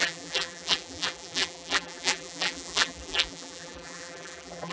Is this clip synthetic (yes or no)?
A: yes